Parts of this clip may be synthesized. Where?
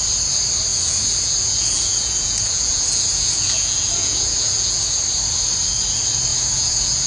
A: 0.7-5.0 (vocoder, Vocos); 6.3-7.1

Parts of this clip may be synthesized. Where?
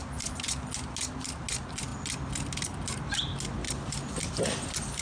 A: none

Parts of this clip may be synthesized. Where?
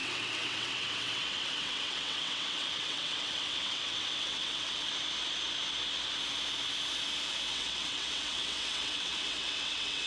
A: 0.0-4.9 (vocoder, WaveNeXt); 7.5-10.1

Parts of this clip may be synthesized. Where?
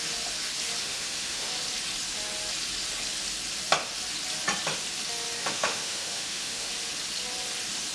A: 0.8-1.5 (autoencoder, DAC-VAE); 5.4-6.7